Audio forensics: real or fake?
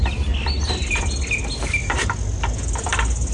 real